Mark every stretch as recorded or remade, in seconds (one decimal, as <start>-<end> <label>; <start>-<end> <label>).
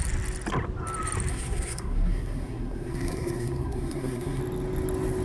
0.0-1.3 recorded; 1.3-4.4 remade; 4.4-5.2 recorded